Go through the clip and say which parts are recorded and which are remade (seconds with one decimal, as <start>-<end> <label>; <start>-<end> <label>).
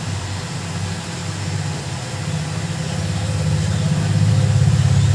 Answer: 0.0-5.1 recorded